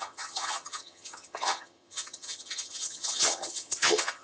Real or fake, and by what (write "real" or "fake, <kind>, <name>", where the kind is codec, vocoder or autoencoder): fake, vocoder, HiFi-GAN